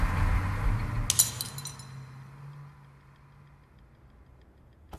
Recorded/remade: recorded